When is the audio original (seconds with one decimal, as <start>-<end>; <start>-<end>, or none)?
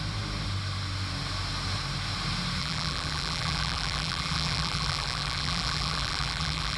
0.0-2.6